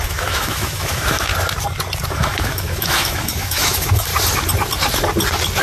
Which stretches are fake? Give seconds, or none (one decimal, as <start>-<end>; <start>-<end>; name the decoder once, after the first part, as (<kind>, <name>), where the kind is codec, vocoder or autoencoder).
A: 0.0-1.3 (autoencoder, DAC-VAE); 2.1-4.1